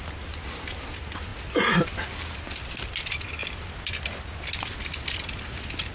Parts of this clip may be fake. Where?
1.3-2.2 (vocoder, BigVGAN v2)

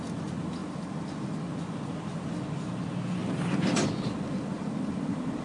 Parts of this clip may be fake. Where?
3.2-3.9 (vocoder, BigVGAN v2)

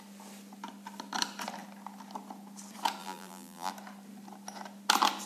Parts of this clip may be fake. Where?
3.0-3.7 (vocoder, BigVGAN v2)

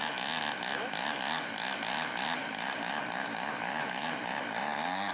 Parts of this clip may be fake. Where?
none

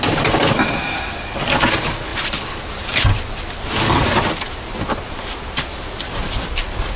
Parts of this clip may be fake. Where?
none

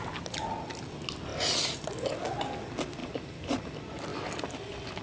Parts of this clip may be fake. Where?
3.0-3.6 (vocoder, BigVGAN v2)